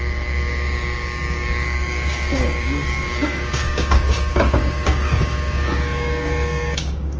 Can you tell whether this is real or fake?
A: fake